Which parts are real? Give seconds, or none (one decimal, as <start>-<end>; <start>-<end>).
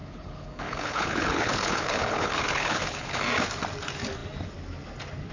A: 3.2-5.3